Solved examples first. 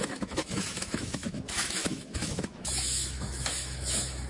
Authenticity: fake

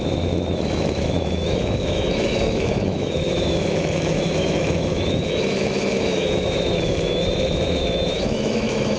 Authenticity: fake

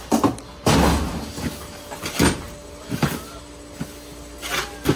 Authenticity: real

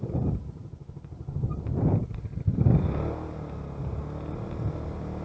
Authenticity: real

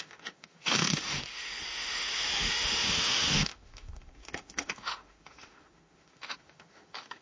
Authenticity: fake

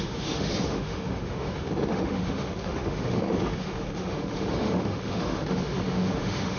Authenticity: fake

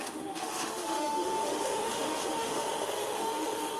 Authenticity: fake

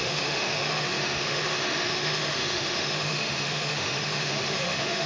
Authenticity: fake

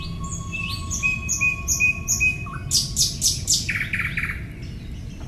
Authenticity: real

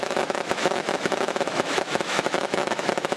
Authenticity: fake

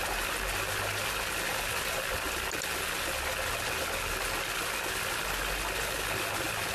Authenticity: real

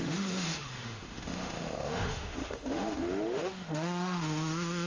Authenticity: fake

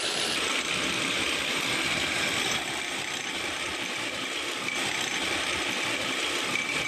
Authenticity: real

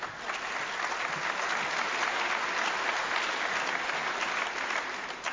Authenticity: real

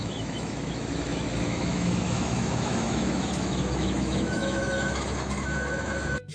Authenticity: fake